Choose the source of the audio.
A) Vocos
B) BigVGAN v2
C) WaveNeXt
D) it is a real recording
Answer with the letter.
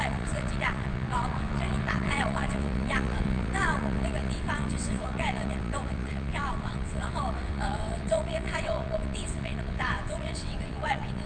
C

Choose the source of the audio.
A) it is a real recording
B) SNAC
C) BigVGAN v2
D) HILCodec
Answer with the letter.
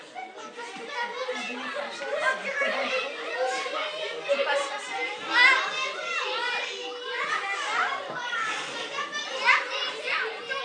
A